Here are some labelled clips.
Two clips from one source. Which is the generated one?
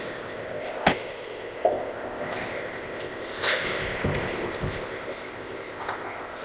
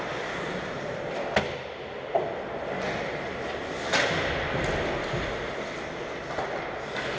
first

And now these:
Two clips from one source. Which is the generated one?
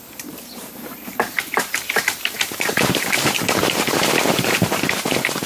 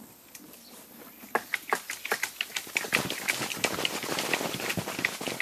first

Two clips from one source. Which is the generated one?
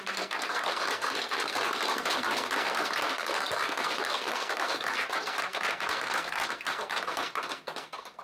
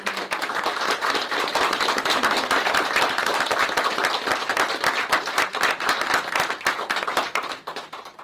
first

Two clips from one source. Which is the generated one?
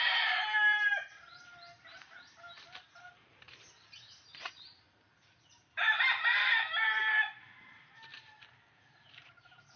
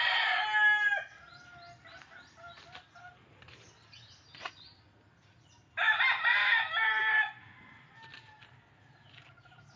first